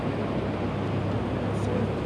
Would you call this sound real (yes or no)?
yes